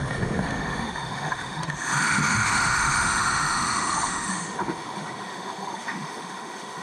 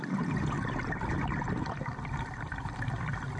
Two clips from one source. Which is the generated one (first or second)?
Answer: first